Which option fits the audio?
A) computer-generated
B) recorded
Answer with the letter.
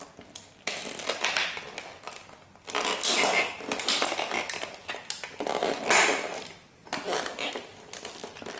B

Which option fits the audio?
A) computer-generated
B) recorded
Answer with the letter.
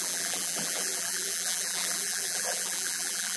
A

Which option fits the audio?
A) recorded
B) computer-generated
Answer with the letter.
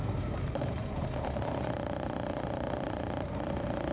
B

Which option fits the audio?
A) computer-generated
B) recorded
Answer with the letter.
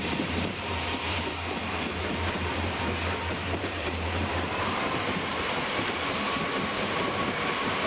A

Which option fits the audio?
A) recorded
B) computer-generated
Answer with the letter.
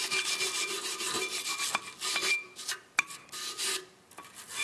A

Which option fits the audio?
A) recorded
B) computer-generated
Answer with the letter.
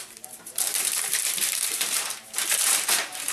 B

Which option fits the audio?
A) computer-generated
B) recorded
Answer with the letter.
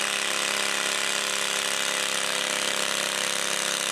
B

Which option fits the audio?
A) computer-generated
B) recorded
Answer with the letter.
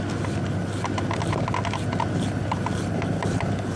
B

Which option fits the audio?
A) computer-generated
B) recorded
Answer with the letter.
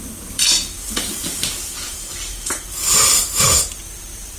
A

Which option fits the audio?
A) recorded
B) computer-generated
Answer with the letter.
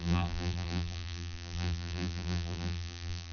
B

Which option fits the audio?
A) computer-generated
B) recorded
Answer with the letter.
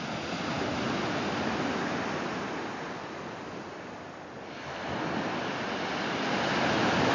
B